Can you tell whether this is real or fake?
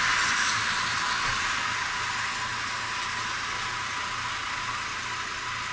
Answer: real